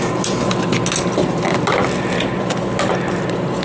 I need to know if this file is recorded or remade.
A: recorded